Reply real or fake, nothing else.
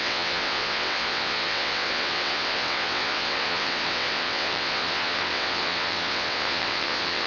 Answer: fake